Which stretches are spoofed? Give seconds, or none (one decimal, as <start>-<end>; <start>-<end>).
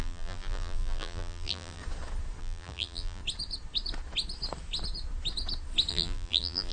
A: 0.0-1.8; 2.4-3.2; 5.9-6.7